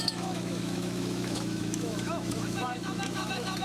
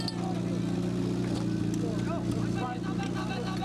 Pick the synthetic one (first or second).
first